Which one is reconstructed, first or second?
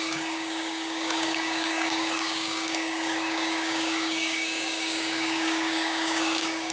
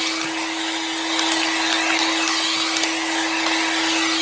first